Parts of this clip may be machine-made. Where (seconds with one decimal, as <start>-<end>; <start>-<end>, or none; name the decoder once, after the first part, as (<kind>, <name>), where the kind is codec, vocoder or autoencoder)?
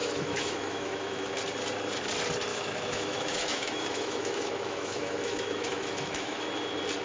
0.0-1.3 (autoencoder, DAC-VAE); 2.5-6.4